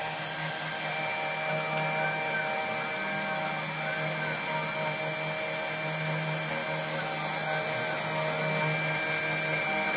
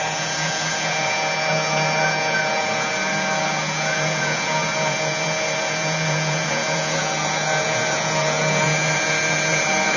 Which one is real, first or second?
first